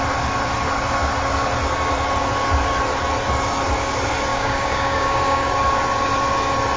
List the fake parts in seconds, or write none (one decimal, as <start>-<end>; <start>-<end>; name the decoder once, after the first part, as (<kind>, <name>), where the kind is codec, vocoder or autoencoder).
4.3-5.5 (codec, DAC)